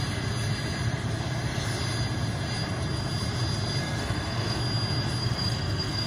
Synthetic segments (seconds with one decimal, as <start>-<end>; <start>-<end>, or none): 3.8-4.6; 5.2-6.1